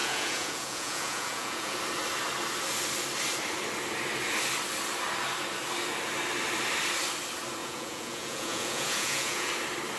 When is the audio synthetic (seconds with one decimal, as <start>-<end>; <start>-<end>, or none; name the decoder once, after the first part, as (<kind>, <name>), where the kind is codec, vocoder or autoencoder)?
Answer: 0.0-1.7 (vocoder, Vocos); 7.6-9.5